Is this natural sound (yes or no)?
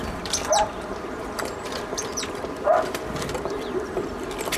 no